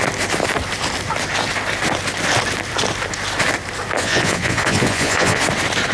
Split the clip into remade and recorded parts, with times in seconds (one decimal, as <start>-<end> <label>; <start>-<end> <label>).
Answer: 0.0-4.0 recorded; 4.0-5.4 remade; 5.4-5.9 recorded